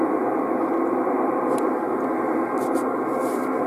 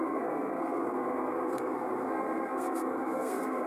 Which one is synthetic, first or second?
second